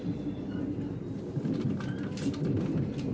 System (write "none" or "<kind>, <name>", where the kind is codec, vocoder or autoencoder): none